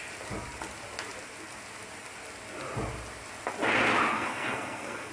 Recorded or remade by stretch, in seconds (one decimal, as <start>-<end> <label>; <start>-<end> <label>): 0.0-4.1 recorded; 4.1-5.1 remade